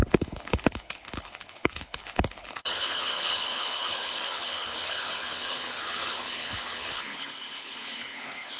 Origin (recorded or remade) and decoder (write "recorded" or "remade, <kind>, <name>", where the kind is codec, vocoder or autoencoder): remade, codec, HILCodec